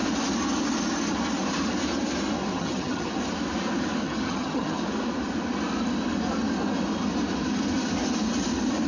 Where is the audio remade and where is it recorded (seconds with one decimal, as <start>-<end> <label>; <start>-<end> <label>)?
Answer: 0.0-2.5 recorded; 2.5-3.1 remade; 3.1-4.0 recorded; 4.0-4.8 remade; 4.8-8.9 recorded